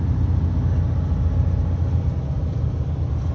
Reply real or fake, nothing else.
real